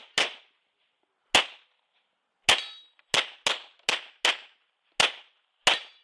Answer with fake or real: real